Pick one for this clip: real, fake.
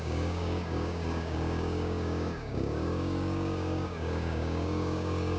fake